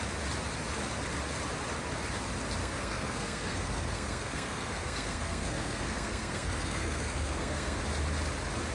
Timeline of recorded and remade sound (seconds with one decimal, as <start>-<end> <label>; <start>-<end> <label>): 0.0-2.6 recorded; 2.6-7.8 remade; 7.8-8.7 recorded